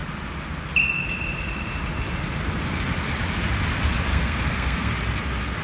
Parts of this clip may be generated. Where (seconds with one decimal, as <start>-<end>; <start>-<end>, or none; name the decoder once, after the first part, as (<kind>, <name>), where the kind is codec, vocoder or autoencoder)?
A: 4.1-4.9 (codec, SNAC)